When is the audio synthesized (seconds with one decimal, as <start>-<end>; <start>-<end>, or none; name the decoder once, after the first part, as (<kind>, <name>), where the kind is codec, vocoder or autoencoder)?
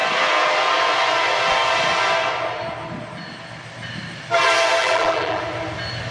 4.8-5.4 (vocoder, BigVGAN v2)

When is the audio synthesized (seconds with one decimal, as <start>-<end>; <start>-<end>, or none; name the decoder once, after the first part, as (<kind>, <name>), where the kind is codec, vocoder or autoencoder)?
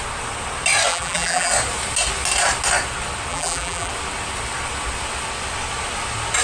0.9-1.5 (vocoder, BigVGAN v2); 3.3-3.9